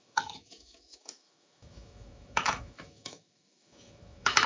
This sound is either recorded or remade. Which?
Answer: remade